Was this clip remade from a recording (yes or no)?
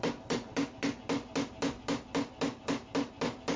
no